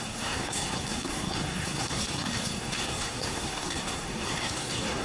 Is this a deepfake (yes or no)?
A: yes